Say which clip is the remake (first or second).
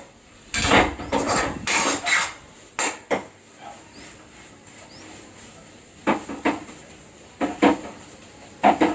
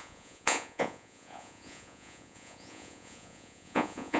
second